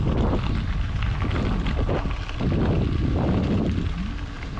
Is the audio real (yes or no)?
yes